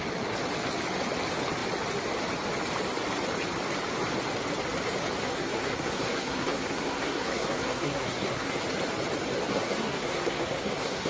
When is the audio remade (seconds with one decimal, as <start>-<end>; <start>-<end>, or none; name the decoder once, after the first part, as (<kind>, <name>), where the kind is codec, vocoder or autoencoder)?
5.2-8.6 (codec, SNAC); 9.5-11.1